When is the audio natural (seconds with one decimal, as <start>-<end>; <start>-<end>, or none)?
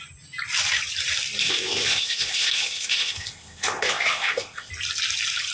0.0-1.4; 4.7-5.5